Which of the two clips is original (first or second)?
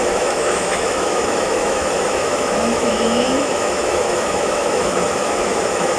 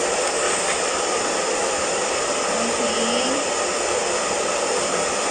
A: second